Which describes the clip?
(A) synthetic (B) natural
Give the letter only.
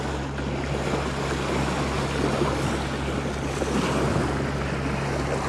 B